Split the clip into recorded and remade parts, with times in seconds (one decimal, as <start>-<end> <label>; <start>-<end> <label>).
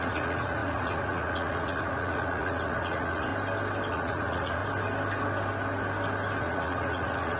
0.0-3.3 remade; 3.3-3.9 recorded; 3.9-4.6 remade; 4.6-6.4 recorded; 6.4-7.4 remade